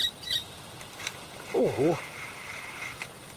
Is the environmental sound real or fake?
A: real